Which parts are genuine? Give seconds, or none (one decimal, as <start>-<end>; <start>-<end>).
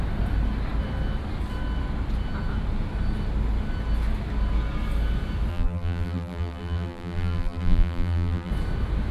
0.0-5.5; 8.5-9.1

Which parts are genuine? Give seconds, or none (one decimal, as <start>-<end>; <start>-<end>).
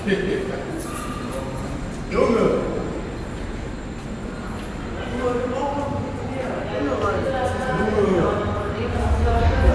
0.0-9.7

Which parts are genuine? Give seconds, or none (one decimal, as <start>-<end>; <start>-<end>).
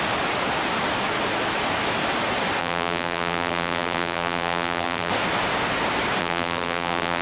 0.0-2.6; 5.1-6.2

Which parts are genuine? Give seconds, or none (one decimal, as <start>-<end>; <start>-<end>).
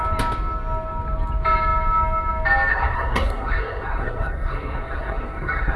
0.0-2.7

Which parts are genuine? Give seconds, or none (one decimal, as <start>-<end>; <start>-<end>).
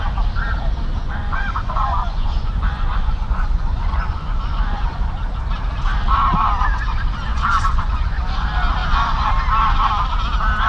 0.0-1.0; 5.1-7.3; 8.2-8.8; 9.3-10.7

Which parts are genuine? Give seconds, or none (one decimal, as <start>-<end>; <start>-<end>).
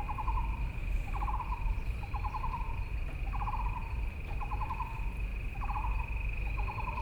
0.0-0.8; 2.9-3.8; 4.4-7.0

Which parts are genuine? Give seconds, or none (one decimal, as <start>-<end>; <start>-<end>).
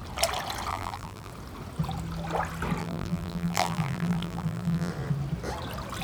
0.0-0.7; 1.3-2.8; 4.9-6.0